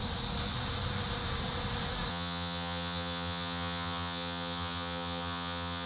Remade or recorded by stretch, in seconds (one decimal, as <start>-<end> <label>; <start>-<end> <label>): 0.0-2.1 recorded; 2.1-5.9 remade